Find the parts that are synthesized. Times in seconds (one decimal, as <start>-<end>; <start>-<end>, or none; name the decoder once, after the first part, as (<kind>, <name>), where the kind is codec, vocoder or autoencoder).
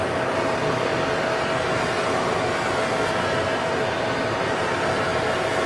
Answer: 0.0-0.9 (vocoder, BigVGAN v2); 4.3-5.1